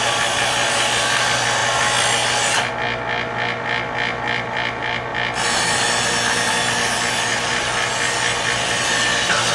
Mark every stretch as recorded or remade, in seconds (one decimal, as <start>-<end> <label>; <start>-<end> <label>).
0.0-9.5 recorded